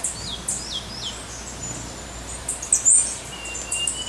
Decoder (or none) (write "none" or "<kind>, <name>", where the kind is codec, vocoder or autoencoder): none